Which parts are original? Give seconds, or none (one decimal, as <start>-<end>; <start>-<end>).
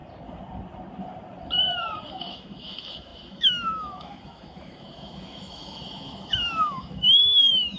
0.0-2.1